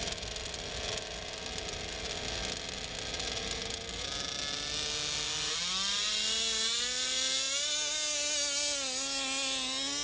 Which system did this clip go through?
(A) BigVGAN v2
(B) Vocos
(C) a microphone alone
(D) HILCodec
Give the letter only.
C